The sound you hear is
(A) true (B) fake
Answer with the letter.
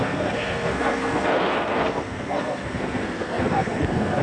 B